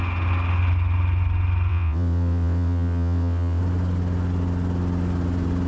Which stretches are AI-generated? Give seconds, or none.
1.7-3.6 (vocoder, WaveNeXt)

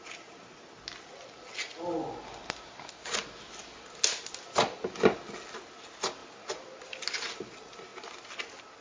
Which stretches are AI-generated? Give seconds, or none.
none

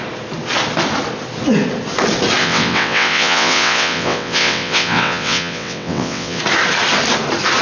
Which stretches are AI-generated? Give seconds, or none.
2.4-6.4 (vocoder, WaveNeXt)

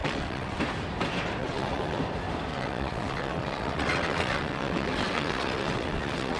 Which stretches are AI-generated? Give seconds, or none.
0.0-0.6 (vocoder, WaveNeXt); 1.4-2.0; 2.5-6.4

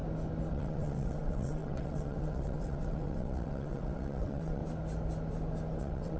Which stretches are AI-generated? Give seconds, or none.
0.5-4.6 (vocoder, WaveNeXt); 5.8-6.2

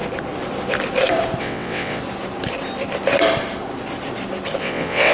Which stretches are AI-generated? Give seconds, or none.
1.4-2.0 (vocoder, WaveNeXt); 4.6-5.1

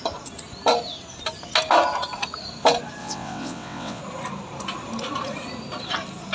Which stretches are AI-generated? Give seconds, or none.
3.0-4.0 (vocoder, WaveNeXt)